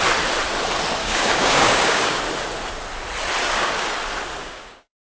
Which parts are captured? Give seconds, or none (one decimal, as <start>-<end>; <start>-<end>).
0.0-1.0; 2.2-3.4; 3.9-4.4